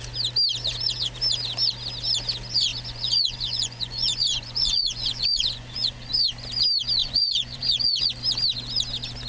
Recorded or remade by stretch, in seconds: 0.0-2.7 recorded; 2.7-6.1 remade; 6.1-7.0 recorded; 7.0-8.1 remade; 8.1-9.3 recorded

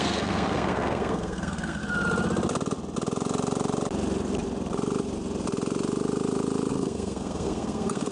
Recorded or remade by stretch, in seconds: 0.0-1.8 remade; 1.8-6.7 recorded; 6.7-8.1 remade

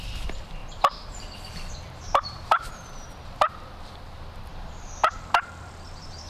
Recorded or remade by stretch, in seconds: 0.0-0.6 recorded; 0.6-3.1 remade; 3.1-4.5 recorded; 4.5-6.3 remade

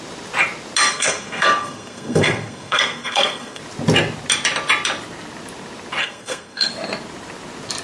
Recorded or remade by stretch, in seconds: 0.0-0.9 recorded; 0.9-3.6 remade; 3.6-6.0 recorded; 6.0-6.7 remade; 6.7-7.8 recorded

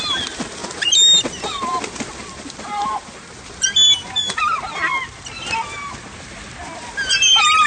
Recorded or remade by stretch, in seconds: 0.0-7.7 recorded

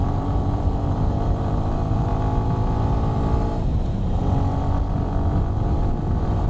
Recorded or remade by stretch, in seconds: 0.0-2.1 remade; 2.1-5.5 recorded; 5.5-6.5 remade

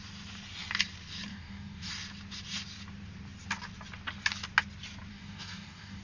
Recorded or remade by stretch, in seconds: 0.0-1.3 recorded; 1.3-1.9 remade; 1.9-5.1 recorded; 5.1-6.0 remade

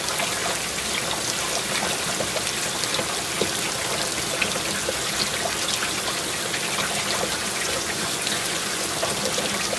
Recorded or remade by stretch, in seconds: 0.0-7.4 recorded; 7.4-8.9 remade; 8.9-9.8 recorded